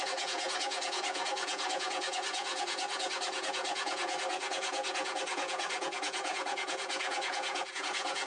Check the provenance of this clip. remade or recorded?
remade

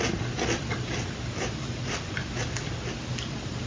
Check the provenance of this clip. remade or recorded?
recorded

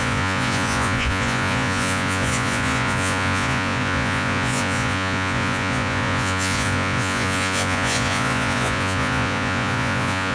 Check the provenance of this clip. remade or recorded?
remade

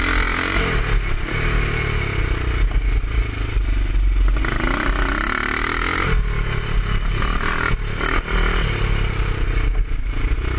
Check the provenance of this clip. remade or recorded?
recorded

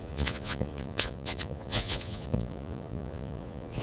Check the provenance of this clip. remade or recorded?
remade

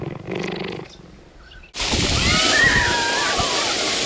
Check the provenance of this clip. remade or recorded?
recorded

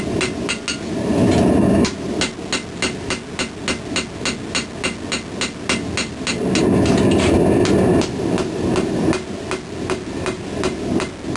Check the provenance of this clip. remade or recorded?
recorded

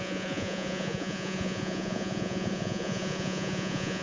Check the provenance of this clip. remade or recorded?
remade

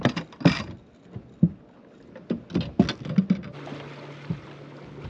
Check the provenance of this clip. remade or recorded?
recorded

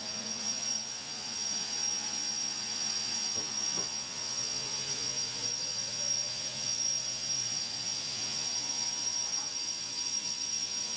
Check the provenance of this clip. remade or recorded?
remade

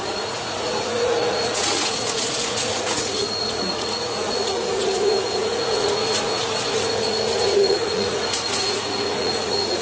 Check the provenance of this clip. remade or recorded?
remade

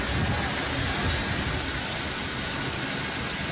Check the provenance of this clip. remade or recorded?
recorded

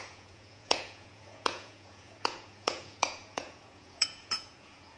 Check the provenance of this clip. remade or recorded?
remade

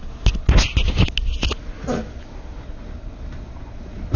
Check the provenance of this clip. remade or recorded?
recorded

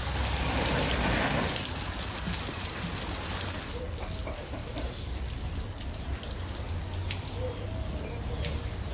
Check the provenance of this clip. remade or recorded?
recorded